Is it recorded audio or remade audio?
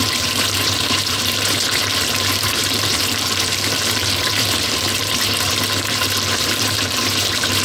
remade